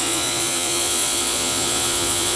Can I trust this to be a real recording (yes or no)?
no